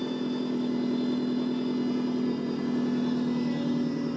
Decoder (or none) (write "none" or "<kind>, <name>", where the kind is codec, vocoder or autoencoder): none